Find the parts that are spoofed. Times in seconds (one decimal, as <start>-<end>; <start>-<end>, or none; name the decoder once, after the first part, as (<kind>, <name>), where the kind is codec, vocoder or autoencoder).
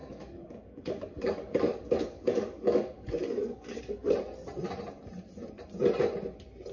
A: 0.0-3.8 (codec, DAC)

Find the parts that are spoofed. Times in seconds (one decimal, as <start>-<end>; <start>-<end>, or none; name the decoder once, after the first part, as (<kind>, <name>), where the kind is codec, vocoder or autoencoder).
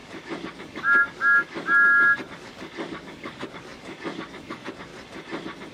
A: 0.0-4.9 (codec, DAC)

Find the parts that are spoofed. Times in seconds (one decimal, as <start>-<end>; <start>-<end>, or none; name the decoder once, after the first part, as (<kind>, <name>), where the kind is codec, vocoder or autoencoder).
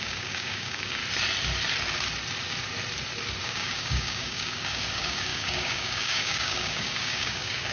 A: 0.0-1.0 (codec, DAC); 3.4-7.7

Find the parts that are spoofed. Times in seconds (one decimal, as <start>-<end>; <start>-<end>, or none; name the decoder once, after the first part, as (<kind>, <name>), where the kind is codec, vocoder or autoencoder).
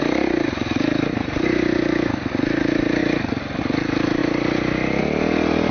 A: none